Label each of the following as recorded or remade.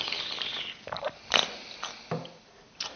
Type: remade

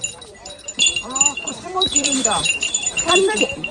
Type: remade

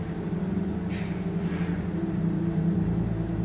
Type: remade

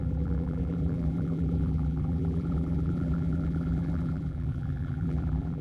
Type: remade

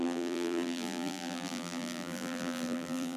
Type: remade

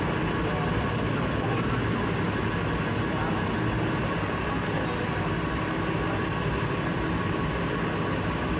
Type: recorded